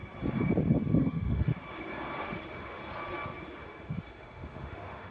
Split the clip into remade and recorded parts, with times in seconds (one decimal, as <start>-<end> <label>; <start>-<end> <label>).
0.0-1.0 recorded; 1.0-1.5 remade; 1.5-2.2 recorded; 2.2-2.8 remade; 2.8-3.5 recorded; 3.5-5.1 remade